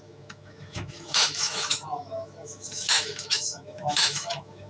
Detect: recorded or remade remade